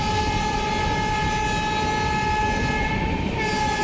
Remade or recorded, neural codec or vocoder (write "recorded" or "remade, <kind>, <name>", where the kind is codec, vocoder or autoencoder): recorded